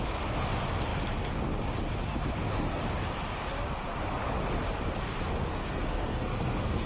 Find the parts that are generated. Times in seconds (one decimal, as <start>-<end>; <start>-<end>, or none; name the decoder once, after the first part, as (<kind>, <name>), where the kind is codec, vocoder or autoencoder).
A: 5.5-6.9 (codec, SNAC)